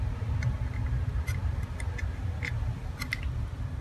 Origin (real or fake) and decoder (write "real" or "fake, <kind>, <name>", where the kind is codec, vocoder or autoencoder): real